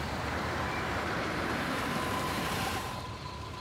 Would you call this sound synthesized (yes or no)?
yes